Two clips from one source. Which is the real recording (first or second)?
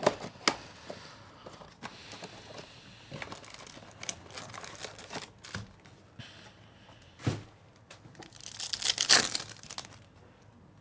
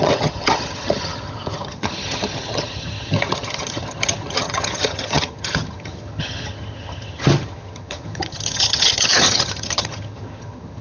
first